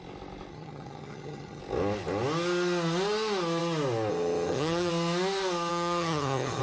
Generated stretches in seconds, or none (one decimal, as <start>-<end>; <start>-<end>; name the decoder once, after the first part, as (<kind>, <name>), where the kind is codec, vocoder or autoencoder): 0.5-1.6 (vocoder, HiFi-GAN); 4.1-4.9; 5.7-6.6